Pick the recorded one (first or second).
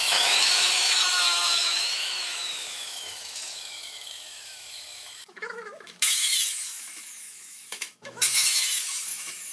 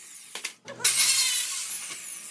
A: second